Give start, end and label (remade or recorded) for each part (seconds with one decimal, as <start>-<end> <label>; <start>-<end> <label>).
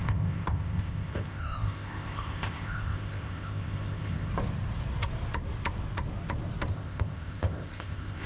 0.0-4.3 remade; 4.3-6.7 recorded; 6.7-8.3 remade